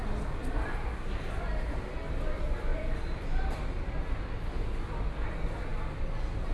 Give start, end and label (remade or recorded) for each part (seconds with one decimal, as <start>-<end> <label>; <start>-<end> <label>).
0.0-2.7 recorded; 2.7-4.2 remade; 4.2-6.5 recorded